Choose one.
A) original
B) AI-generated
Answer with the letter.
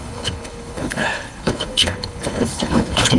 B